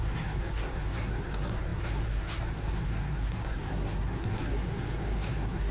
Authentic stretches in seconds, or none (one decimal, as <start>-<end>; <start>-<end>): none